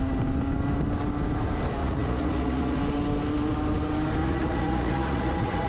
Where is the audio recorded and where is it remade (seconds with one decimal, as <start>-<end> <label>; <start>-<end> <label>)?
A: 0.0-1.8 recorded; 1.8-2.8 remade; 2.8-4.2 recorded; 4.2-5.7 remade